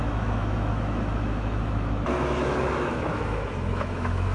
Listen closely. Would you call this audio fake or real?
fake